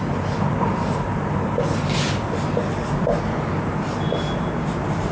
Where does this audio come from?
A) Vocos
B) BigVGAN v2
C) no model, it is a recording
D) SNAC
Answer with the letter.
C